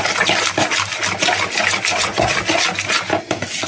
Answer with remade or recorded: recorded